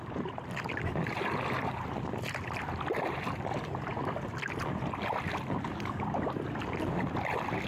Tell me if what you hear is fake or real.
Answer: real